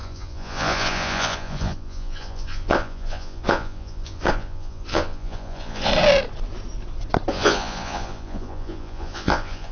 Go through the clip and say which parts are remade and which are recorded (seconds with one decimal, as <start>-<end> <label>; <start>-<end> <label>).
0.0-5.9 remade; 5.9-7.3 recorded; 7.3-9.7 remade